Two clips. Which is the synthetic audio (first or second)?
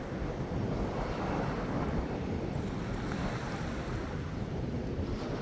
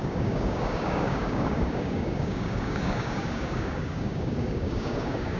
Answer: second